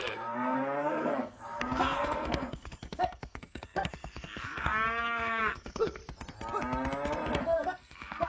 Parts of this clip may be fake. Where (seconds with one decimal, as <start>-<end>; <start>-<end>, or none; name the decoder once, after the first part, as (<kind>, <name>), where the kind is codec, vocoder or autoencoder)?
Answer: 0.0-6.0 (codec, SNAC); 7.4-8.3